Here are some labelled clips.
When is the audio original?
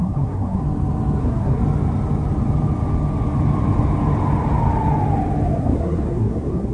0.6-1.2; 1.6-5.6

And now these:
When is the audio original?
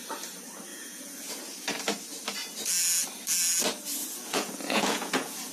0.0-0.7; 1.3-4.0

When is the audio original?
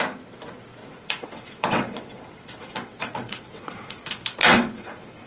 0.0-0.8; 4.0-4.4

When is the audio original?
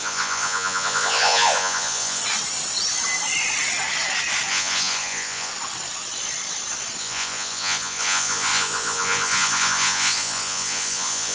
2.2-4.5; 5.5-7.0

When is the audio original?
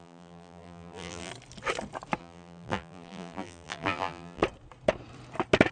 1.3-2.2; 4.4-5.7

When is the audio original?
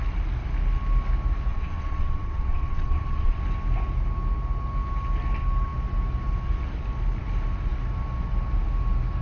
0.0-1.5; 3.4-9.2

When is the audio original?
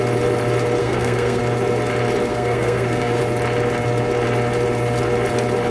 0.0-0.8; 1.4-2.3; 3.2-5.7